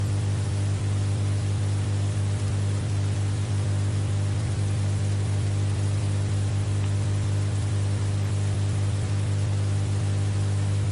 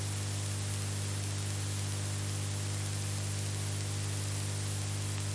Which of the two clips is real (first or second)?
second